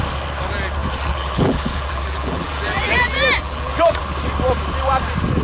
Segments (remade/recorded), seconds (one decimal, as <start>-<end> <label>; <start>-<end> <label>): 0.0-0.8 recorded; 0.8-4.0 remade; 4.0-5.4 recorded